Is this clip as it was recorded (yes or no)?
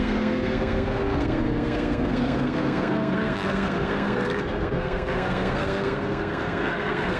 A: no